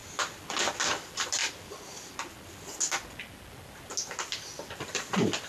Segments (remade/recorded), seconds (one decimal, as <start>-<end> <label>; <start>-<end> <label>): 0.0-5.5 recorded